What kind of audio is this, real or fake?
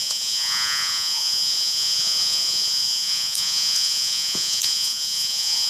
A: fake